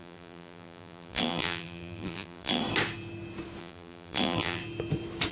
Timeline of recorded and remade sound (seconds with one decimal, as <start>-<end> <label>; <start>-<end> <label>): 0.0-2.6 remade; 2.6-3.6 recorded; 3.6-4.6 remade; 4.6-5.3 recorded